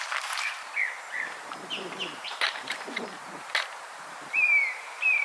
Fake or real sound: fake